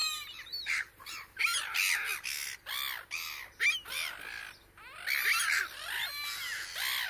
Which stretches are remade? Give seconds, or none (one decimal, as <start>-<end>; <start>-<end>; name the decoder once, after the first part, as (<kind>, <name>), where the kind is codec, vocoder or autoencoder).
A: 0.0-1.4 (vocoder, BigVGAN v2)